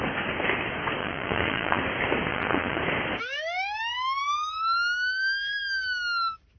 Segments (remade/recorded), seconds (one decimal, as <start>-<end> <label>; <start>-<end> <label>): 0.0-1.0 recorded; 1.0-1.8 remade; 1.8-2.3 recorded; 2.3-2.8 remade; 2.8-6.6 recorded